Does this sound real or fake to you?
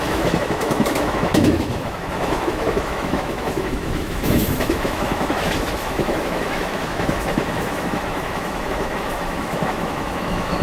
fake